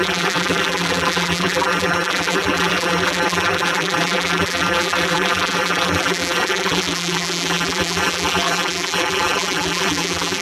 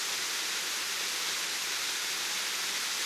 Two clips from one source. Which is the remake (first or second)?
first